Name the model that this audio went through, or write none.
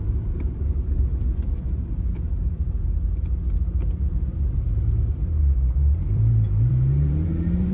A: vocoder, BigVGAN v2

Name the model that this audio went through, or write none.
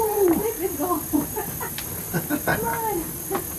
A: none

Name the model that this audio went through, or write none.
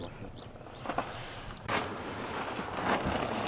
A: vocoder, BigVGAN v2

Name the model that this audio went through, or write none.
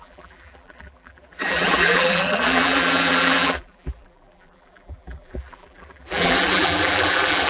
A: vocoder, BigVGAN v2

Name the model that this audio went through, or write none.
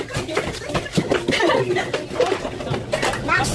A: none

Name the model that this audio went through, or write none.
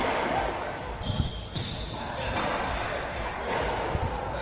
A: none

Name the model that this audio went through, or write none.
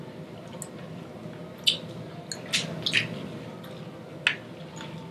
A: none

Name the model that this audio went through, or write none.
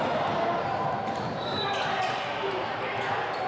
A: none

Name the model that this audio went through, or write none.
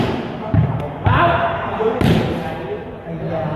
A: none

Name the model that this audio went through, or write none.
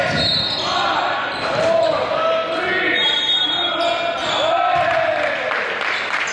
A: none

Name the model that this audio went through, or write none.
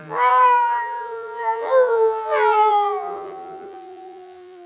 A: vocoder, BigVGAN v2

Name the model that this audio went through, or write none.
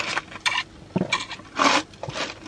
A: none